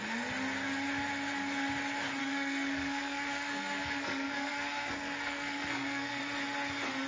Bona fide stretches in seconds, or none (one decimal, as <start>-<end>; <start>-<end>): 0.0-2.2; 6.2-7.1